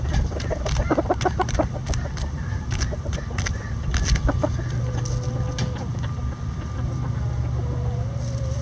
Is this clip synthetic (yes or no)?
no